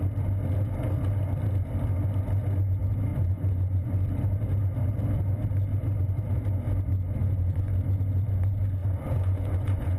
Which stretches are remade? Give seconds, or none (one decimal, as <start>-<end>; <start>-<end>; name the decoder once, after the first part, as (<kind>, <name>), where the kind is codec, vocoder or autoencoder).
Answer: 3.1-4.0 (vocoder, Vocos); 7.2-7.7; 8.8-10.0